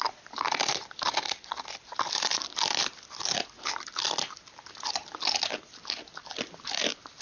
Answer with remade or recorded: recorded